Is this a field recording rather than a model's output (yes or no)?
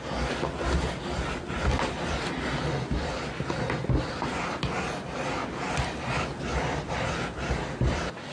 yes